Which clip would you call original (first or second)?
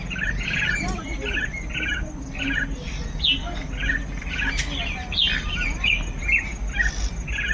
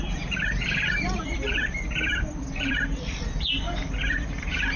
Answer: first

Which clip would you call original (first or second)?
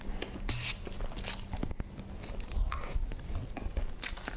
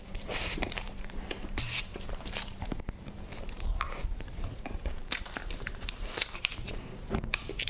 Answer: first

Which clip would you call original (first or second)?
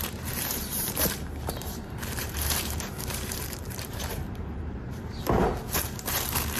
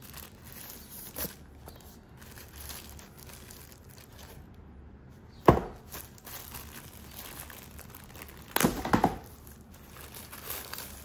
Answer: second